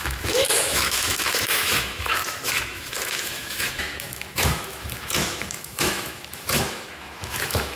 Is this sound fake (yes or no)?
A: yes